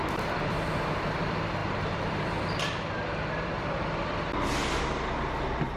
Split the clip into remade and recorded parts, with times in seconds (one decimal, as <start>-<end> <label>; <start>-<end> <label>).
0.0-5.8 recorded